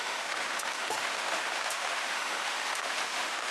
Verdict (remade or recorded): remade